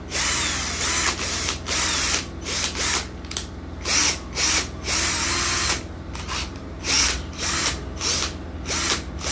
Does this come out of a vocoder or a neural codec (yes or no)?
no